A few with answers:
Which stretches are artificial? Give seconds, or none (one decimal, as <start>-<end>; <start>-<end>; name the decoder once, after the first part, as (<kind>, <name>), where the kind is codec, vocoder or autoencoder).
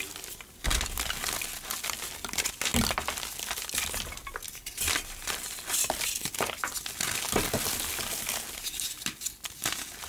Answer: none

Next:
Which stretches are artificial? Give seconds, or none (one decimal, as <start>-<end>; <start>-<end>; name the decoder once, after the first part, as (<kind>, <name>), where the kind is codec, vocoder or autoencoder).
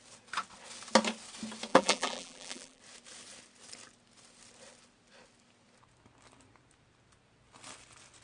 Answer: 1.7-2.8 (vocoder, BigVGAN v2)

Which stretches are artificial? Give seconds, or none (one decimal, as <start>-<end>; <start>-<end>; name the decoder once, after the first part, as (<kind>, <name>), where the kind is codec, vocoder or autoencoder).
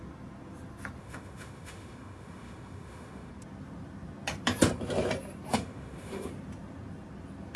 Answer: 1.0-3.3 (autoencoder, DAC-VAE); 5.5-6.3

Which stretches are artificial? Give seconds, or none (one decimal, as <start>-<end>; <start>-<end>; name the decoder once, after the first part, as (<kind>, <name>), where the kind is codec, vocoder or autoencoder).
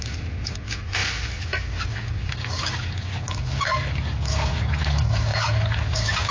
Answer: none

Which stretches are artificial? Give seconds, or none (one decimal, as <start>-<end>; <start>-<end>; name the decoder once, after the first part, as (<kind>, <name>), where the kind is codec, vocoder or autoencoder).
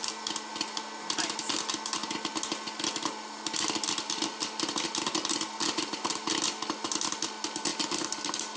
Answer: none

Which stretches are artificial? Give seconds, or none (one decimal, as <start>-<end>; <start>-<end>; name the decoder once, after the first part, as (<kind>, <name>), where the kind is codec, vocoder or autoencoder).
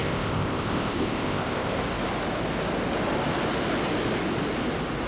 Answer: 0.0-1.8 (codec, ZipCodec)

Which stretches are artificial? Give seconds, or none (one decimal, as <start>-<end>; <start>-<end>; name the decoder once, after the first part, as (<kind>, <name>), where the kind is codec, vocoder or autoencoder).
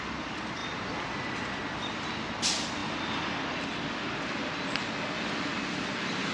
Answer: none